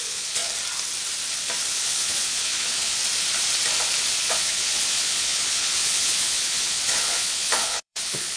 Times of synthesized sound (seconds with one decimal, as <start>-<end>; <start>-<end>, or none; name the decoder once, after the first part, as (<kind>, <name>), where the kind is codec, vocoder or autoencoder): 0.0-0.4 (vocoder, Vocos); 1.7-3.0; 4.1-8.4